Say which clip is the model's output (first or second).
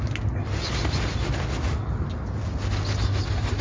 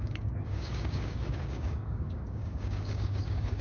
second